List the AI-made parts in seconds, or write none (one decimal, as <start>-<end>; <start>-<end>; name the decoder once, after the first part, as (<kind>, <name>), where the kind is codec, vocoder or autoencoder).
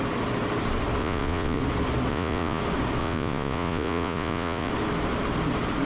1.0-1.6 (vocoder, Vocos); 2.1-2.6; 3.0-4.7